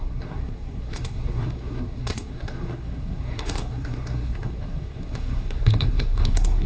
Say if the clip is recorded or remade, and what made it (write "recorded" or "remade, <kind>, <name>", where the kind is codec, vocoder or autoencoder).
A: remade, codec, SNAC